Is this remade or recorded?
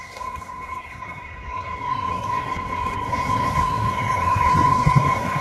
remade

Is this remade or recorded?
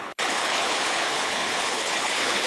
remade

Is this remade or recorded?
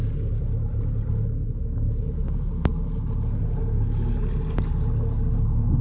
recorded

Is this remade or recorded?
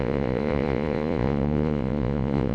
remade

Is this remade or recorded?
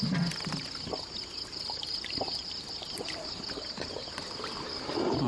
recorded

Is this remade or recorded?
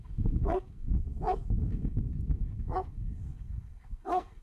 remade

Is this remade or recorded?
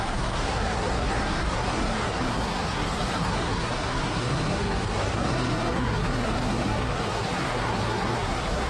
remade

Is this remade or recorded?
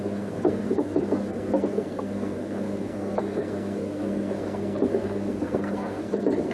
remade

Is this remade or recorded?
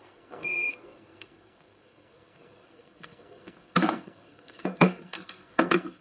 remade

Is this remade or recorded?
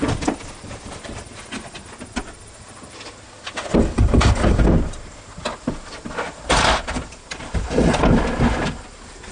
recorded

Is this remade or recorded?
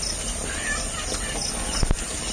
recorded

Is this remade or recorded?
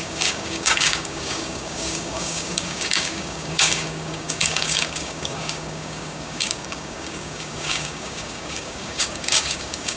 remade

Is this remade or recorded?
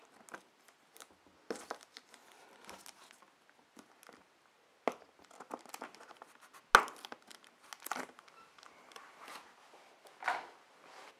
recorded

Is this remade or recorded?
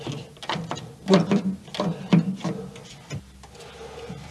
recorded